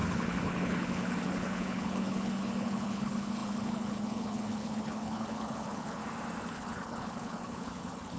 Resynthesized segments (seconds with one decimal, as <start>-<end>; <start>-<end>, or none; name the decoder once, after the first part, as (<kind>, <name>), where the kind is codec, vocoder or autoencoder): 0.0-6.0 (codec, HILCodec); 6.5-8.2